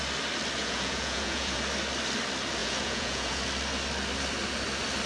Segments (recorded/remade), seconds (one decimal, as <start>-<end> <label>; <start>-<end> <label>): 0.0-0.6 recorded; 0.6-1.6 remade; 1.6-2.6 recorded; 2.6-3.4 remade; 3.4-5.1 recorded